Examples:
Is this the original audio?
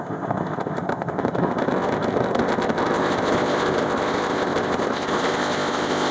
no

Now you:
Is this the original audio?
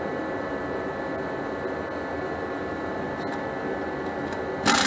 yes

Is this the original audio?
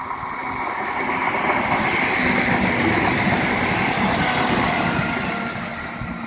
yes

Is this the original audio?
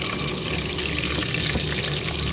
yes